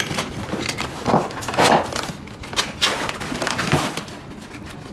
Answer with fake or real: real